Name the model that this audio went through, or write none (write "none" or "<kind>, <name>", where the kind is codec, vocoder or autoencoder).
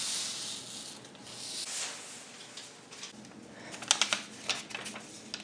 none